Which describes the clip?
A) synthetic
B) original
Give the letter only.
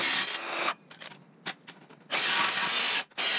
B